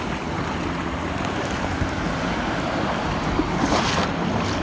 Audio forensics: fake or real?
real